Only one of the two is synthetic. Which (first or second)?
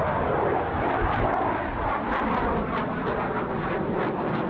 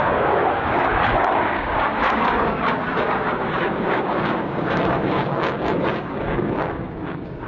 second